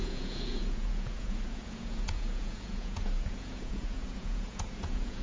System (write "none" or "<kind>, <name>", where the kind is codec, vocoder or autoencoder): vocoder, Vocos